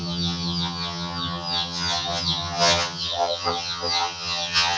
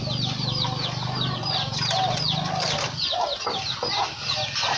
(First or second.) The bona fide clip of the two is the second